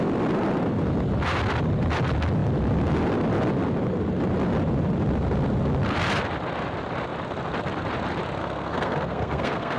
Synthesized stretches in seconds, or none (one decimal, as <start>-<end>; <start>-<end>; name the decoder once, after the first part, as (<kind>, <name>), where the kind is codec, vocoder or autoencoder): 8.4-9.8 (codec, SNAC)